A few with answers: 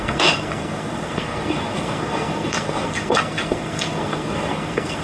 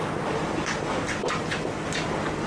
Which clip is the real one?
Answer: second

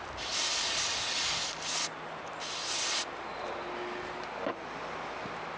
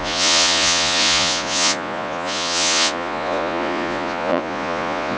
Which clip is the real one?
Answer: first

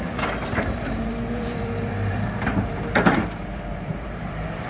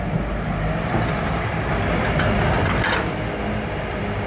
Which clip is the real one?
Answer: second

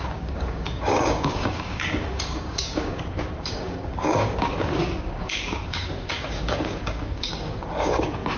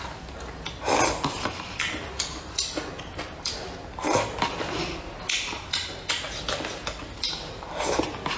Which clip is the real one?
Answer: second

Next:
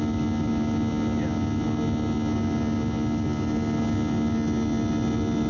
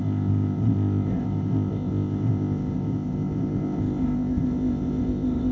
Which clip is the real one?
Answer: first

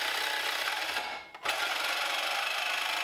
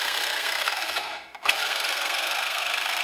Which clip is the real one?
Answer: first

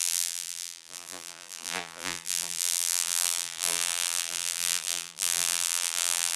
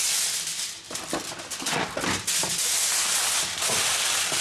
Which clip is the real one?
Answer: second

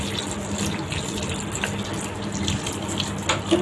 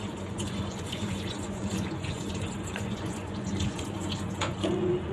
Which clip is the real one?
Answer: first